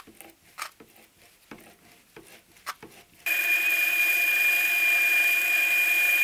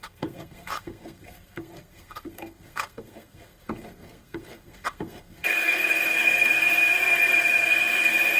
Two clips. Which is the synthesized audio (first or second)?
second